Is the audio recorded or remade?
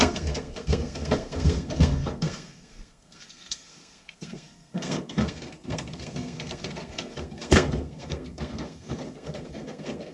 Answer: remade